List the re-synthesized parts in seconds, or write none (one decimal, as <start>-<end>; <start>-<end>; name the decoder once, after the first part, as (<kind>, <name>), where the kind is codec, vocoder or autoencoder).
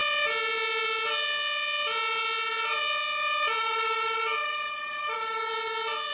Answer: 3.6-5.4 (vocoder, BigVGAN v2)